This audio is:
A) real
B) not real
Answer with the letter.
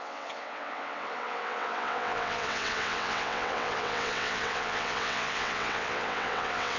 B